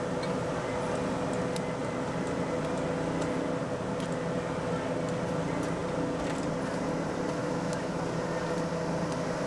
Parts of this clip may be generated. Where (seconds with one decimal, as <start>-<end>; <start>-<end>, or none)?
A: 7.4-8.0